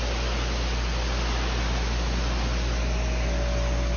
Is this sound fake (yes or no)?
no